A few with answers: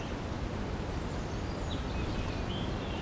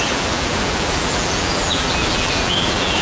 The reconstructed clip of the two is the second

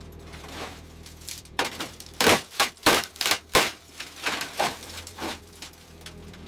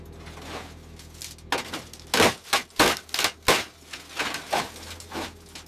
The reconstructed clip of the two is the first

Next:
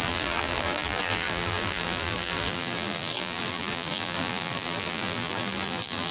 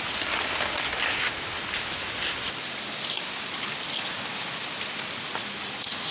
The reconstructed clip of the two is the first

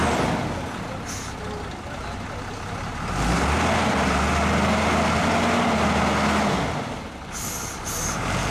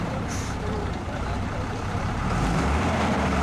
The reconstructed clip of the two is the second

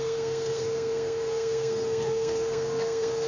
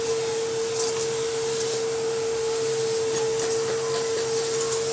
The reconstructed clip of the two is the first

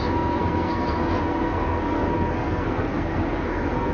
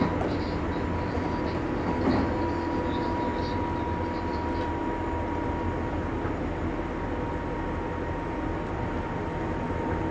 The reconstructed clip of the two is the first